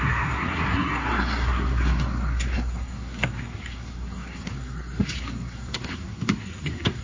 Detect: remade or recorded remade